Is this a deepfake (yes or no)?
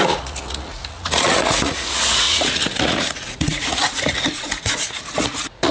yes